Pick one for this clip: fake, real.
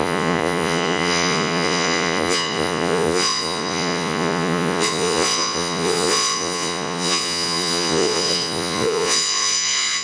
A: fake